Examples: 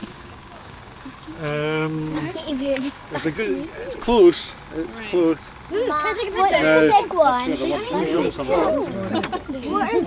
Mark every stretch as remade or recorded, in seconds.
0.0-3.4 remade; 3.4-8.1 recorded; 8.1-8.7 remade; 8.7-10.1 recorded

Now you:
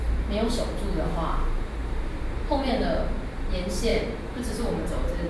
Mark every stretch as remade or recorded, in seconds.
0.0-1.8 recorded; 1.8-3.0 remade; 3.0-3.9 recorded; 3.9-5.3 remade

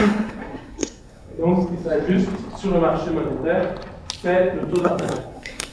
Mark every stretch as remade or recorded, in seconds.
0.0-1.4 remade; 1.4-4.8 recorded; 4.8-5.7 remade

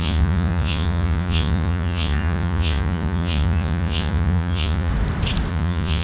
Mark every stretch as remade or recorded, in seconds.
0.0-4.9 remade; 4.9-5.5 recorded; 5.5-6.0 remade

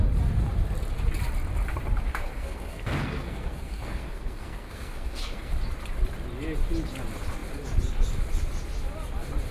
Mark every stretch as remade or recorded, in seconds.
0.0-2.1 recorded; 2.1-5.5 remade; 5.5-9.5 recorded

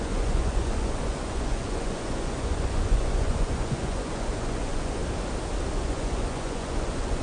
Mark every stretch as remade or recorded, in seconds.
0.0-5.0 remade; 5.0-5.7 recorded; 5.7-7.2 remade